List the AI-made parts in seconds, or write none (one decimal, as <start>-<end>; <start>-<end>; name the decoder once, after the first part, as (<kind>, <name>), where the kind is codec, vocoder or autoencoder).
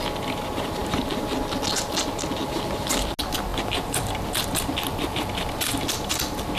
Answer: none